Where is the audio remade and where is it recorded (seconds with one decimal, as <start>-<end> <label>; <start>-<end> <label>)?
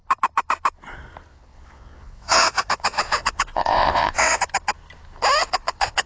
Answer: 0.0-1.3 recorded; 1.3-4.4 remade; 4.4-5.4 recorded; 5.4-6.1 remade